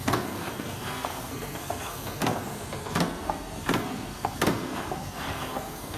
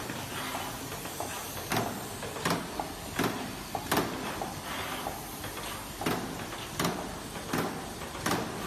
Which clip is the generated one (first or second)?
first